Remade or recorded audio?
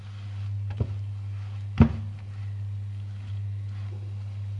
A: recorded